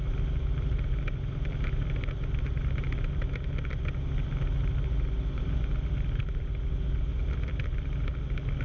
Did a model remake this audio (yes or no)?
no